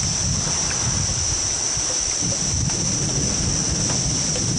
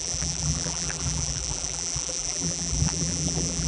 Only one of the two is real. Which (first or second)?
first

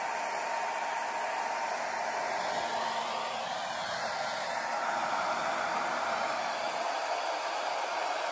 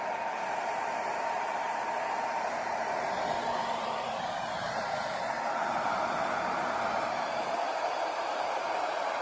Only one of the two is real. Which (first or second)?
first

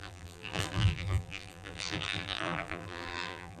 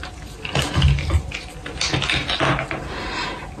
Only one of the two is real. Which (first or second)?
second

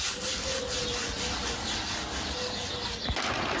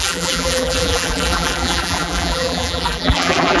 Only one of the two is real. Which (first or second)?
first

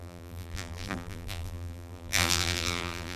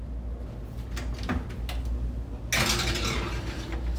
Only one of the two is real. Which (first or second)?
second